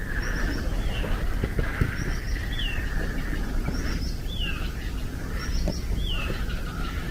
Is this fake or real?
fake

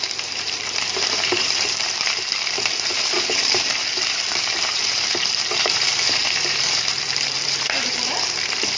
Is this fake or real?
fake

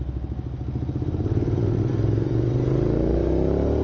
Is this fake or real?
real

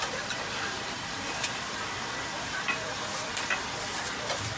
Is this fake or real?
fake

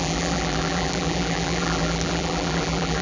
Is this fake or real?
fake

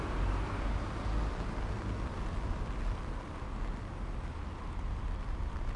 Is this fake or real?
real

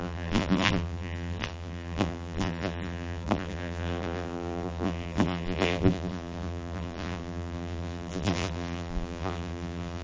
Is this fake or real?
fake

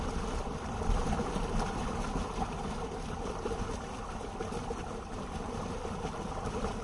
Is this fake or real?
fake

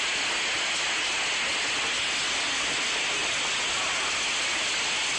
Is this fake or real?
real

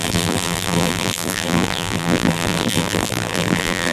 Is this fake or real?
fake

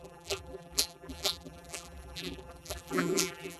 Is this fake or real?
fake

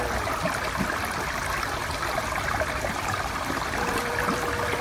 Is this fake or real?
real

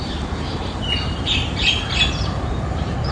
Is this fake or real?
fake